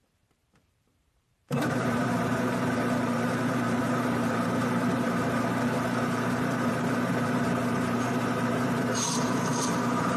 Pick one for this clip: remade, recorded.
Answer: remade